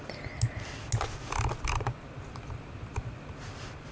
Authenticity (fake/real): real